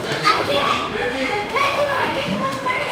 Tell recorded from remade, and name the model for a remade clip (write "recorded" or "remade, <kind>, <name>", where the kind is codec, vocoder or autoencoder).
remade, autoencoder, DAC-VAE